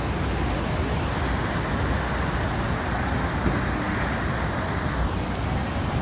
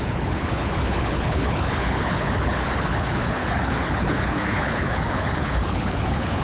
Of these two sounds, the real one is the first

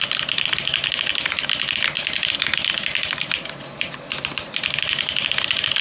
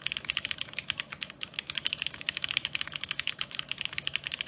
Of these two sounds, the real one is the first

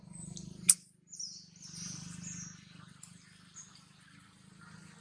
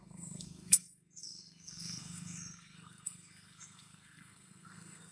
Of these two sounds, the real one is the first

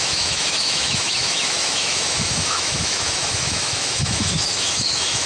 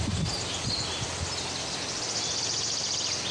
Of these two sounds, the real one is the second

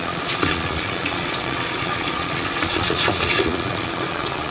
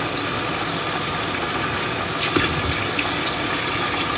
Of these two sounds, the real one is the second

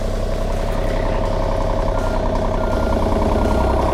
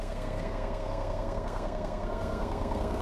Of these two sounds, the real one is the first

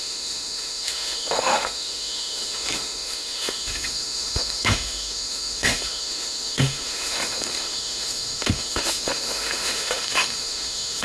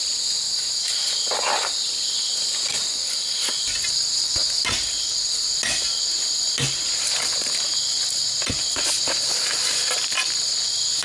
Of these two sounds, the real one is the second